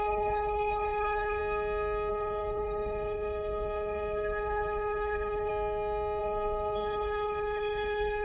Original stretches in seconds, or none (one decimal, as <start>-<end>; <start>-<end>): 1.4-2.1; 5.5-6.2